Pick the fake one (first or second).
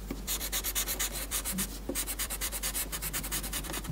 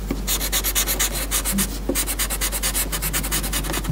first